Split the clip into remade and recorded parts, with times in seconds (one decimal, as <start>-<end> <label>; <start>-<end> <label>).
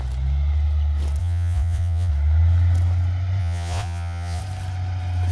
0.0-1.2 recorded; 1.2-2.1 remade; 2.1-3.4 recorded; 3.4-4.4 remade; 4.4-5.3 recorded